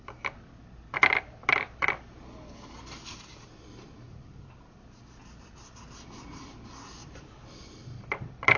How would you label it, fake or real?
real